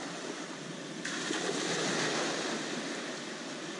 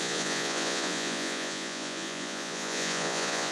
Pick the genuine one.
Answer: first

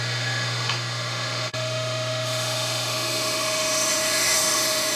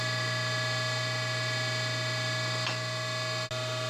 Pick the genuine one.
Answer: second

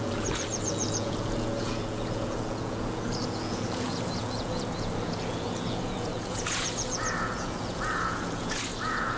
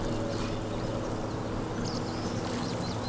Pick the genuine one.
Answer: second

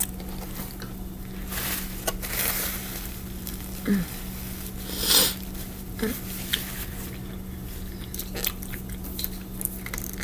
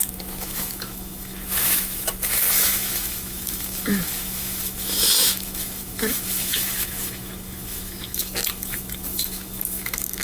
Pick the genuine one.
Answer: first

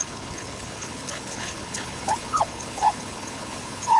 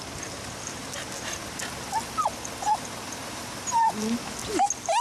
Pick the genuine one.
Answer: second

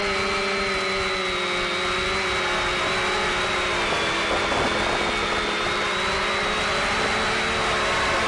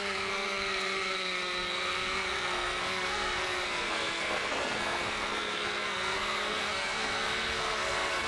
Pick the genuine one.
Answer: first